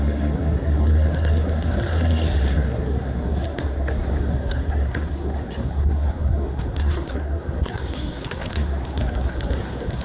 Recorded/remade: remade